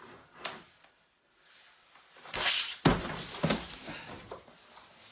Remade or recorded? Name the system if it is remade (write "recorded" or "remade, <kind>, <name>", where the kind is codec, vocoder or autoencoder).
recorded